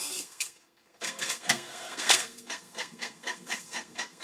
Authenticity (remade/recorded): remade